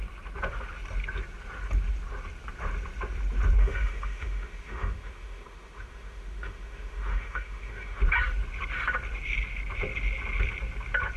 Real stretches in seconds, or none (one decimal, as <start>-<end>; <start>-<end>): 0.0-3.6; 8.0-11.2